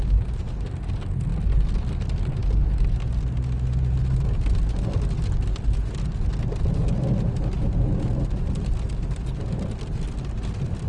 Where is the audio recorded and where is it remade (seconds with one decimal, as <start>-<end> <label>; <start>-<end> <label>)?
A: 0.0-10.9 recorded